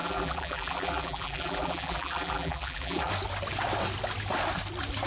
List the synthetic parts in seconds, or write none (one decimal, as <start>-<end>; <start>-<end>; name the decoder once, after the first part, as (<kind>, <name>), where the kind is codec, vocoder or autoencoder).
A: 0.0-3.1 (vocoder, BigVGAN v2)